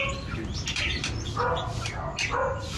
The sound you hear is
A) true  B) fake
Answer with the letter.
A